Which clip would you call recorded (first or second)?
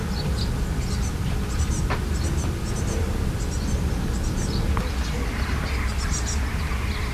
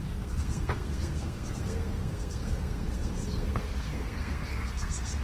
first